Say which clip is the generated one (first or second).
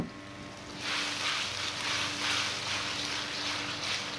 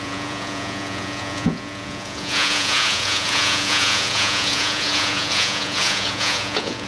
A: second